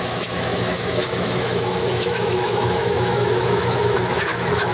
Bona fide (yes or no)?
no